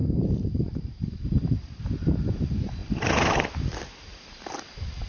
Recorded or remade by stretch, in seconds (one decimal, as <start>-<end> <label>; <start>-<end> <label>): 0.0-1.6 remade; 1.6-2.8 recorded; 2.8-3.3 remade; 3.3-5.1 recorded

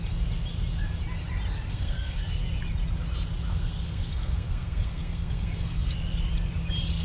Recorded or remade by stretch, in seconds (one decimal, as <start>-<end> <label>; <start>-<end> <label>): 0.0-1.7 recorded; 1.7-2.4 remade; 2.4-3.5 recorded; 3.5-5.9 remade; 5.9-7.0 recorded

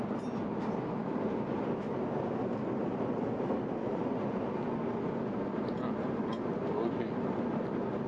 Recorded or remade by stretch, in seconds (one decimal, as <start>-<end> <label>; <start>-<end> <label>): 0.0-3.8 recorded; 3.8-4.4 remade; 4.4-8.1 recorded

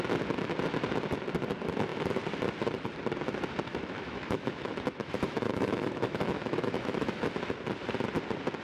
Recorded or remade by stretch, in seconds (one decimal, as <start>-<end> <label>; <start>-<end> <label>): 0.0-3.7 recorded; 3.7-7.2 remade; 7.2-8.6 recorded

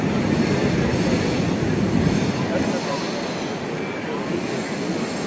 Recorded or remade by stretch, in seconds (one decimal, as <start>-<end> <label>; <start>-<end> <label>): 0.0-5.3 recorded